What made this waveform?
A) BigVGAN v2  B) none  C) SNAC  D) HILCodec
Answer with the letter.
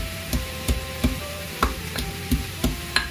A